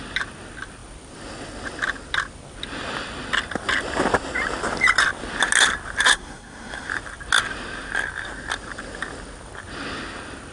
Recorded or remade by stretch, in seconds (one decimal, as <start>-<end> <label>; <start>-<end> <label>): 0.0-6.1 recorded; 6.1-6.9 remade; 6.9-10.5 recorded